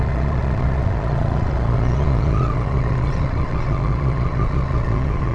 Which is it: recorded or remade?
remade